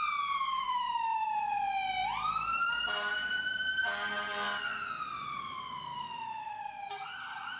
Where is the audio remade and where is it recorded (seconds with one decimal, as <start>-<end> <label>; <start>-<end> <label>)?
0.0-0.5 recorded; 0.5-1.3 remade; 1.3-5.9 recorded; 5.9-6.7 remade; 6.7-7.6 recorded